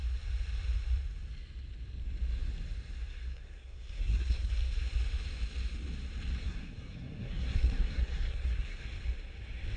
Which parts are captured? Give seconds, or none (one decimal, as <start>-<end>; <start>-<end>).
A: 0.0-3.1; 4.5-6.4; 8.8-9.8